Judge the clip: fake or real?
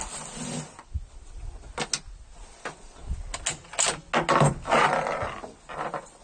real